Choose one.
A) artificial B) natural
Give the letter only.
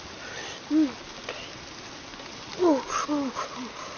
B